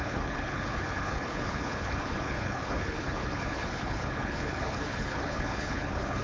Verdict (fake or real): fake